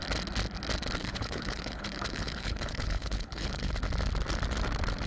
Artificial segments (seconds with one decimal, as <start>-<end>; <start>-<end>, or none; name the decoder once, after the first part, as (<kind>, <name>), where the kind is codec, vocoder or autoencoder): 1.0-3.7 (codec, HILCodec)